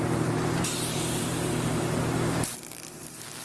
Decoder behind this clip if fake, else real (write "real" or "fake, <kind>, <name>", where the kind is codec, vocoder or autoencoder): fake, vocoder, BigVGAN v2